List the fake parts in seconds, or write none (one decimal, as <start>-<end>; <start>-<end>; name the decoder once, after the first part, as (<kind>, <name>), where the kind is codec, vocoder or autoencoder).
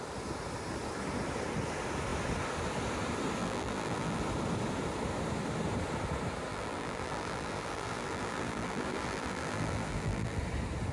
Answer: 3.4-4.2 (vocoder, BigVGAN v2); 6.5-10.4